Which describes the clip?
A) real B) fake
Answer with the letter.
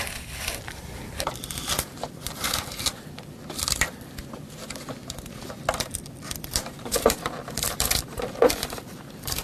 B